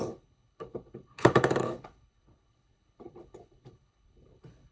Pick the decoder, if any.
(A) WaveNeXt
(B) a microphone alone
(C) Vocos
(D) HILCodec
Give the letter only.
D